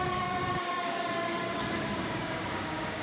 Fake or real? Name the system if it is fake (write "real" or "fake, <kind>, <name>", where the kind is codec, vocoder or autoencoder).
fake, codec, DAC